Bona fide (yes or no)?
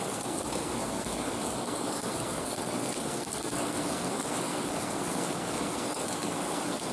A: no